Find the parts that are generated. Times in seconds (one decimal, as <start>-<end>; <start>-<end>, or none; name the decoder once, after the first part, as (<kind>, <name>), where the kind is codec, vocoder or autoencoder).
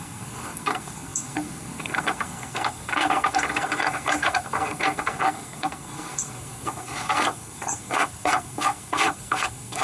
0.0-9.8 (codec, SNAC)